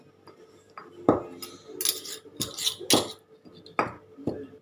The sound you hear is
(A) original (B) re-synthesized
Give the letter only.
A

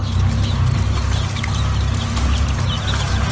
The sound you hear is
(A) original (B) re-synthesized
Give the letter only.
A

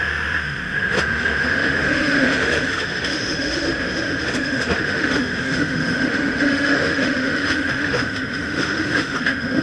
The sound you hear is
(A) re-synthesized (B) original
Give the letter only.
A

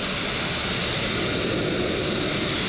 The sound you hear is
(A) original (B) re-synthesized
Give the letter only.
A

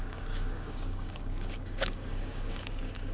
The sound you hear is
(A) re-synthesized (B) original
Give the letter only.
A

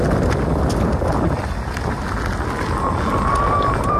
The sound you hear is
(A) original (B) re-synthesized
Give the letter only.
A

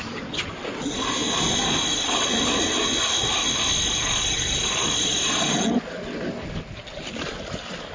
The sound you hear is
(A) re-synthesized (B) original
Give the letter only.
B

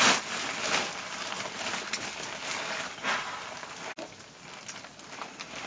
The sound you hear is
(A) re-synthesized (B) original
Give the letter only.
B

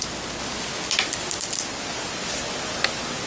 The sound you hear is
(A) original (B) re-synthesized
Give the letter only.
A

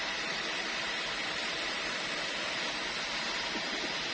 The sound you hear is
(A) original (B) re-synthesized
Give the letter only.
A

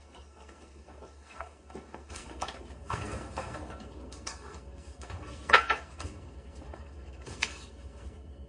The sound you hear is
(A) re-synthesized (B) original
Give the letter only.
A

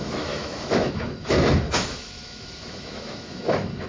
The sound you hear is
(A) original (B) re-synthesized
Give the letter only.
B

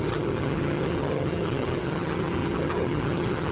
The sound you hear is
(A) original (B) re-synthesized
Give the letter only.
B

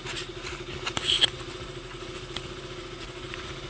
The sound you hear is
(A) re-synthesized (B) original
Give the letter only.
B